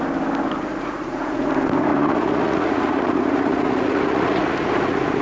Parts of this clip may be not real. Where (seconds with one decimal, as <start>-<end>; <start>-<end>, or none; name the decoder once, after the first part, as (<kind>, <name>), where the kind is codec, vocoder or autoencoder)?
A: 0.7-1.5 (vocoder, Vocos); 1.9-5.2